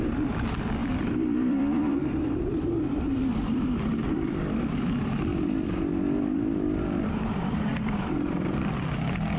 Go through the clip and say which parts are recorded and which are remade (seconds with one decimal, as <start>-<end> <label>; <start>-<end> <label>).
0.0-5.3 remade; 5.3-6.2 recorded; 6.2-9.4 remade